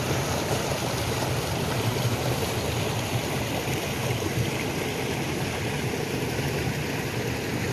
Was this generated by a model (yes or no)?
no